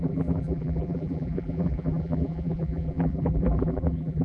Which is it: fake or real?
fake